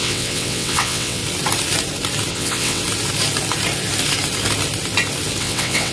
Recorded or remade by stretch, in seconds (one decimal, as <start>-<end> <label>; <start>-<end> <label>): 0.0-1.2 remade; 1.2-2.3 recorded; 2.3-2.8 remade; 2.8-5.4 recorded; 5.4-5.9 remade

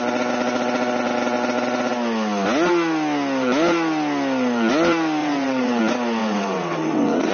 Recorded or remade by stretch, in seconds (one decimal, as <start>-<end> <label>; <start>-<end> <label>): 0.0-5.2 recorded; 5.2-5.8 remade; 5.8-6.2 recorded; 6.2-7.3 remade

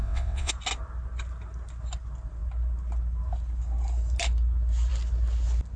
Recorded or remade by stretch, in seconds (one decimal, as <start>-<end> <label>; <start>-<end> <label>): 0.0-0.5 remade; 0.5-5.8 recorded

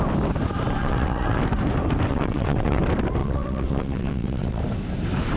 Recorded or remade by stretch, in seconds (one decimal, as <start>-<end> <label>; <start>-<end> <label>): 0.0-0.8 recorded; 0.8-1.4 remade; 1.4-2.1 recorded; 2.1-2.8 remade; 2.8-3.2 recorded; 3.2-4.6 remade; 4.6-5.4 recorded

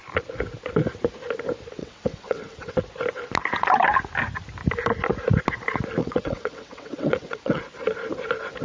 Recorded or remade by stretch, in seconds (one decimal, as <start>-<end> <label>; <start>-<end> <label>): 0.0-1.8 recorded; 1.8-2.8 remade; 2.8-6.0 recorded; 6.0-7.6 remade; 7.6-8.6 recorded

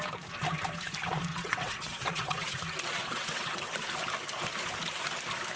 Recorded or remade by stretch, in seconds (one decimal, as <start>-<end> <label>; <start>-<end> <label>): 0.0-1.3 recorded; 1.3-2.6 remade; 2.6-3.0 recorded; 3.0-3.6 remade; 3.6-5.6 recorded

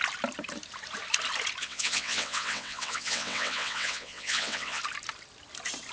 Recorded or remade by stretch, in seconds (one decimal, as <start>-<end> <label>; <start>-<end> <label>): 0.0-1.6 recorded; 1.6-4.8 remade; 4.8-5.9 recorded

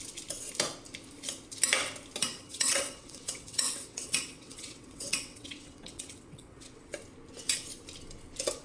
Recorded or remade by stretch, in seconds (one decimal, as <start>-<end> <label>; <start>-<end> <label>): 0.0-2.3 recorded; 2.3-7.0 remade; 7.0-8.6 recorded